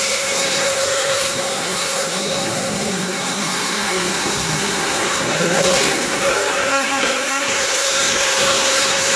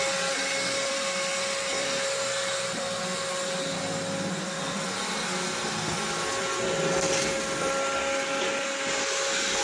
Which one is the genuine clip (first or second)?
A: second